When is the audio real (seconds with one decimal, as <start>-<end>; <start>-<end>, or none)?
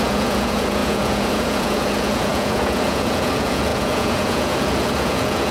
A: none